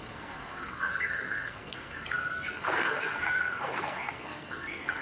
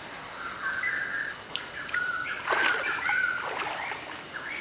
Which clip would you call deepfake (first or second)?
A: first